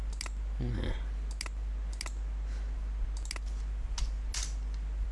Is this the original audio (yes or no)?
yes